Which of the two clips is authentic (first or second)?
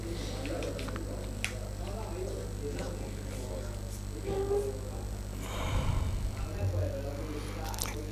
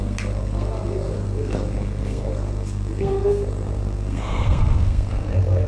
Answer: first